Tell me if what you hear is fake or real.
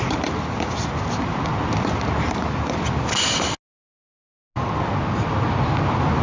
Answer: real